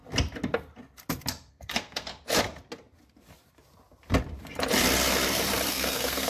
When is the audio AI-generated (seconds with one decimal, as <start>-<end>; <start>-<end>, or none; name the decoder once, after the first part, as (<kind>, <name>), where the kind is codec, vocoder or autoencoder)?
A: 1.5-2.1 (codec, SNAC); 5.7-6.3